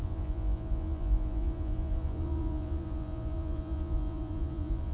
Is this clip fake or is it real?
fake